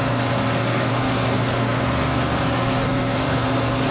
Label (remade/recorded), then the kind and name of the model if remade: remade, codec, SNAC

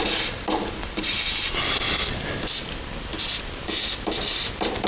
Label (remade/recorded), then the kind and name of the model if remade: recorded